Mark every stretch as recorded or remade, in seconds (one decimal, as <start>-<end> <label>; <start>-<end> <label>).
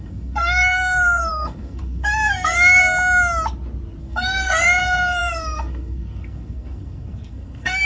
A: 0.0-2.8 remade; 2.8-4.0 recorded; 4.0-7.9 remade